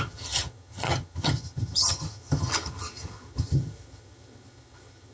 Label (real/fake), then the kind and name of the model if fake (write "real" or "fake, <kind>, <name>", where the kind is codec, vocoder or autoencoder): fake, vocoder, HiFi-GAN